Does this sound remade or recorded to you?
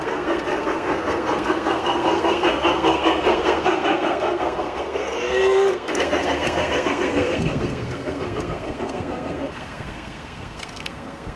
remade